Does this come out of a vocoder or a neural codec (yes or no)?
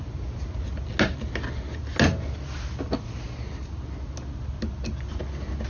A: no